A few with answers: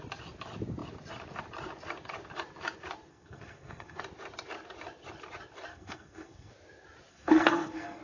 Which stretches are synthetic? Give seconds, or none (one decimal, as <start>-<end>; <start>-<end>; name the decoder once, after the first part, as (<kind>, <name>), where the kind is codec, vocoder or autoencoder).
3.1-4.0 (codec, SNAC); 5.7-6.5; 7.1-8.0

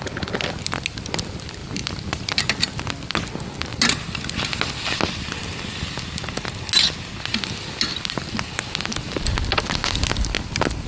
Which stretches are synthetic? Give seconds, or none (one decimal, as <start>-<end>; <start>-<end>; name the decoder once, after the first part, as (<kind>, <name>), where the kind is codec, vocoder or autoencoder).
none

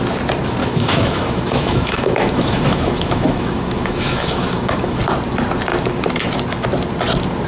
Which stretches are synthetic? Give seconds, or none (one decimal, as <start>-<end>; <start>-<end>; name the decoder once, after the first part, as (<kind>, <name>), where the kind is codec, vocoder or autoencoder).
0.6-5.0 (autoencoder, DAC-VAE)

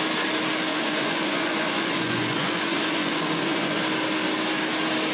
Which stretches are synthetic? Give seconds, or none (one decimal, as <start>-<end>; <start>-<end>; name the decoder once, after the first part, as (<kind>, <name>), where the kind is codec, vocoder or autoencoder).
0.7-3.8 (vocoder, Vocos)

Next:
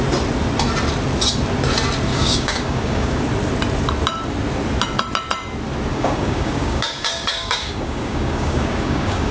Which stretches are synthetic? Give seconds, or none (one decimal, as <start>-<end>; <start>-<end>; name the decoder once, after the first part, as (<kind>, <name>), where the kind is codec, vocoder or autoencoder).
2.1-3.2 (codec, DAC); 5.9-9.3

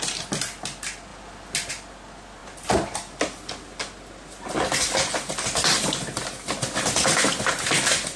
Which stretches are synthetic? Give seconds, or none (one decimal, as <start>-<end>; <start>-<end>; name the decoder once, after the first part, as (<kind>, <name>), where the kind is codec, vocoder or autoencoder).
none

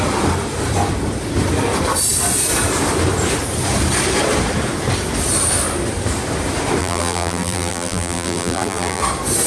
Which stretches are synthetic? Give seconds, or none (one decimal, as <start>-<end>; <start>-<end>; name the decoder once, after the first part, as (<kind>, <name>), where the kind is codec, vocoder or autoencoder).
6.8-9.0 (vocoder, BigVGAN v2)